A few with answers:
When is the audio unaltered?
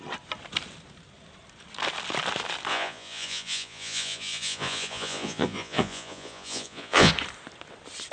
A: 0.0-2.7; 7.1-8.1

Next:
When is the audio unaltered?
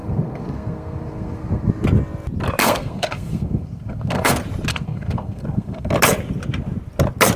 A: 1.7-2.6; 4.3-4.7; 5.9-7.4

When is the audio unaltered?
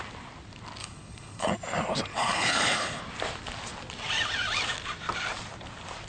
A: 0.0-0.8; 1.5-2.1; 3.0-6.1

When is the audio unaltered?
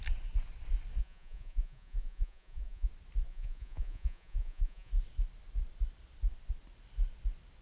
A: 0.0-1.0; 2.9-3.3; 4.9-7.6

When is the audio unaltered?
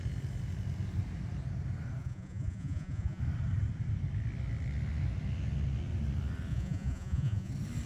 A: 0.0-2.0; 3.2-6.5; 7.5-7.9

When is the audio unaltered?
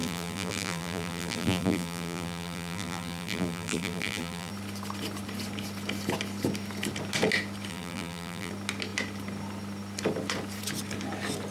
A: 4.5-7.7; 8.5-11.5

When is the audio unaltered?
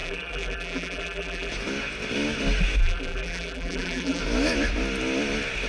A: 1.5-2.8; 4.2-5.7